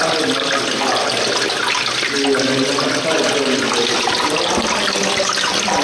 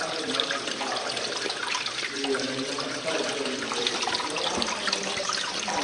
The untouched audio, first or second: first